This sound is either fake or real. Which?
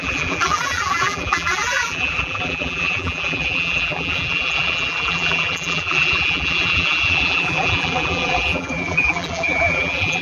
fake